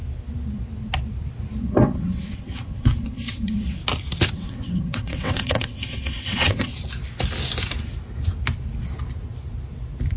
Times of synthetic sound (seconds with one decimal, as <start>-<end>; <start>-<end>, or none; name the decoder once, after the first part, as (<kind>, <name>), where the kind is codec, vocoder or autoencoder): 1.6-3.8 (vocoder, WaveNeXt); 4.3-6.7